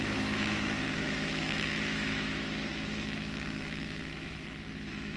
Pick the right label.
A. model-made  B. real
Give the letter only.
A